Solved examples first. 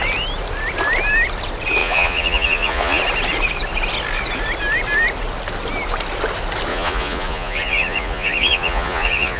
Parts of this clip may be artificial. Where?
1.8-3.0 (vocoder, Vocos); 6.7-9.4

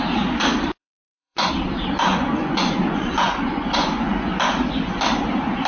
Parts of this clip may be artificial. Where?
0.8-1.5 (vocoder, Vocos); 2.1-4.3